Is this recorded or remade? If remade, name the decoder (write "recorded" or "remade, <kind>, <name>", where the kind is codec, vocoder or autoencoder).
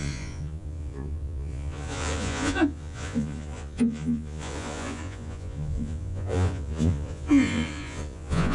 remade, vocoder, Vocos